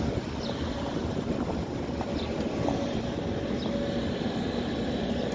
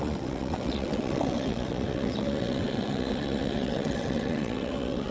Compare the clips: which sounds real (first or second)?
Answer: first